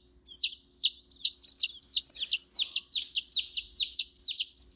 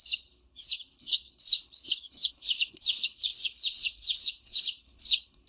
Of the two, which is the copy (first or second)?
second